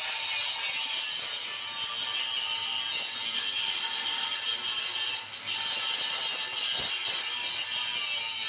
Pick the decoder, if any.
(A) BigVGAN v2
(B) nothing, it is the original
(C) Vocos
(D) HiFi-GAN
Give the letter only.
B